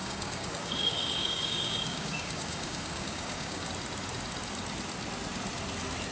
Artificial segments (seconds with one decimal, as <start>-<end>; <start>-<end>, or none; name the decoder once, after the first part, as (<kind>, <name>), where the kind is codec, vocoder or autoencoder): 0.0-3.7 (codec, DAC)